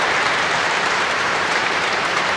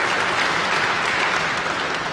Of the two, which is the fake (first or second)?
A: first